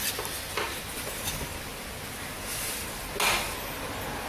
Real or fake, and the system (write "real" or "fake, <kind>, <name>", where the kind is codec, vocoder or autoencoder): real